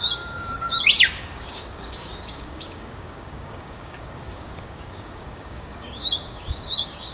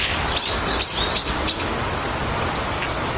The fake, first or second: first